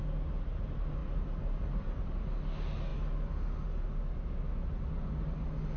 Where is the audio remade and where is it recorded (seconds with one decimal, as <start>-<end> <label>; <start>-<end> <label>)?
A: 0.0-1.0 recorded; 1.0-2.0 remade; 2.0-5.8 recorded